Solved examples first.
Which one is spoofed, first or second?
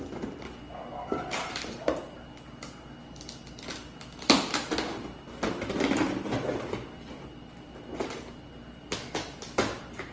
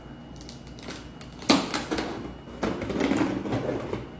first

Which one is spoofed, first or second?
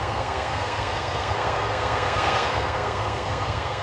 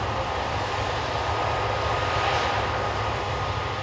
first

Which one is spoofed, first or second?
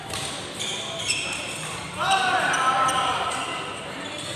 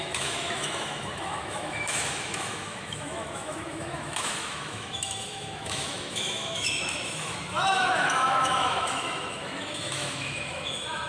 second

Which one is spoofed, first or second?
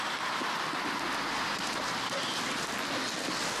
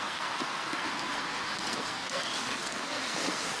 second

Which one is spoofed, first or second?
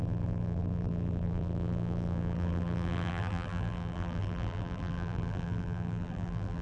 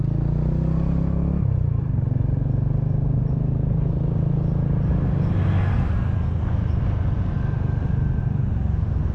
first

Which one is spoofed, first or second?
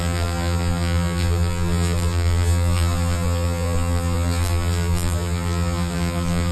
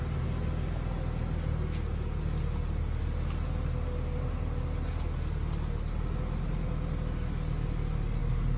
first